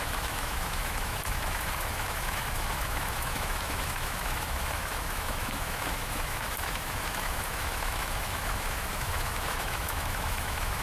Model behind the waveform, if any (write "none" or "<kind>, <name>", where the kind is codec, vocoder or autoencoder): autoencoder, DAC-VAE